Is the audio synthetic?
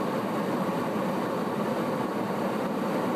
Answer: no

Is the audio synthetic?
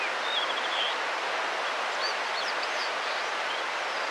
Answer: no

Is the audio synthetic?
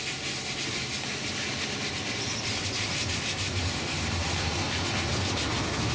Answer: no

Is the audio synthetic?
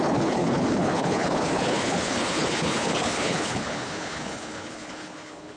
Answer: yes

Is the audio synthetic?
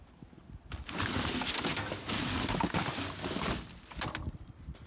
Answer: no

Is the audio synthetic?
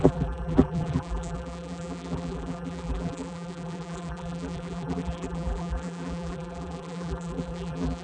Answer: yes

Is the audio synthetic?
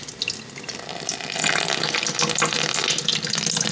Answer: no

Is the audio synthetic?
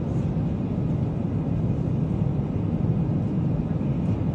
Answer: no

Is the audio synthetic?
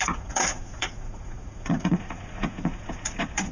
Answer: yes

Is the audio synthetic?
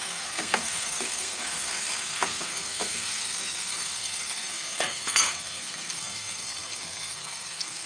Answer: yes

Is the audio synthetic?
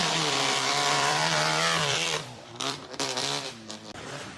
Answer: yes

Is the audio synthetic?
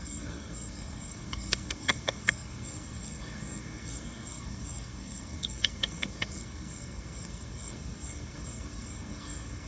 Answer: yes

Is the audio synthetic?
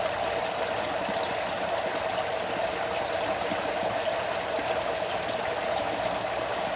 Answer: no